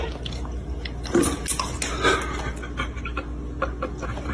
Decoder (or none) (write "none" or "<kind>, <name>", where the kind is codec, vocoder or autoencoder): none